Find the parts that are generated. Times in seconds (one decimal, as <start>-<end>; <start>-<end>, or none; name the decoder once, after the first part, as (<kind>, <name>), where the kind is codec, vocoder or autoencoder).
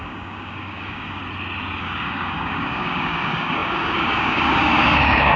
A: 0.0-1.2 (codec, DAC); 1.8-5.4